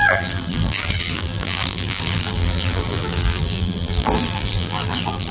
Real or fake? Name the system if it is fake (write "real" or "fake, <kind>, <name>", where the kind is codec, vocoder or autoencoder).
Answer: fake, vocoder, BigVGAN v2